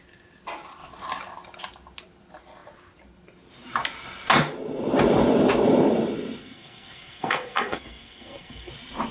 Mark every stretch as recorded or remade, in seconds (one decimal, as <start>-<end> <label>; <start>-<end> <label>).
0.0-6.4 recorded; 6.4-8.7 remade; 8.7-9.1 recorded